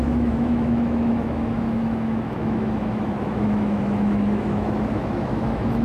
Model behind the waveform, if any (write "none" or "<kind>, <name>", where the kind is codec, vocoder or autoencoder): autoencoder, DAC-VAE